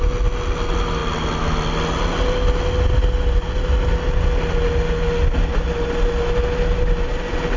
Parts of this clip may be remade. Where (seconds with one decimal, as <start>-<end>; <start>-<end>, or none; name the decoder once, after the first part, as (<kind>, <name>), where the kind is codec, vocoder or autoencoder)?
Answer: none